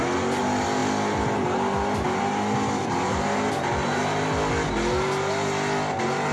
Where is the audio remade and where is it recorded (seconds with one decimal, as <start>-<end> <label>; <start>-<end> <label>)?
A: 0.0-6.3 recorded